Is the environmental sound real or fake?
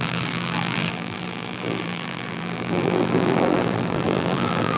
fake